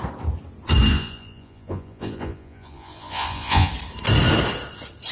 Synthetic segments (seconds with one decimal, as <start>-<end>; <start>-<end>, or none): 0.9-3.7